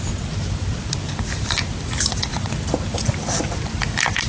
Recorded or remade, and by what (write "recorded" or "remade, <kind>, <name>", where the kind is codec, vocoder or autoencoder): remade, vocoder, BigVGAN v2